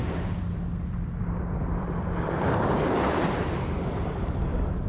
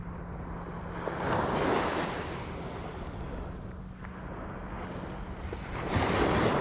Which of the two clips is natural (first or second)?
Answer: second